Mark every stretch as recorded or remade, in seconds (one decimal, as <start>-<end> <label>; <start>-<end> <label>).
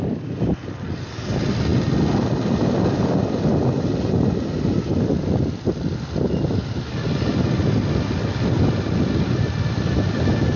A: 0.0-10.6 recorded